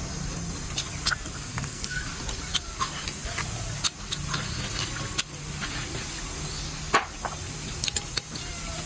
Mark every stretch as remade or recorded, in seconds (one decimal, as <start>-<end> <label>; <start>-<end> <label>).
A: 0.0-1.5 recorded; 1.5-2.0 remade; 2.0-8.9 recorded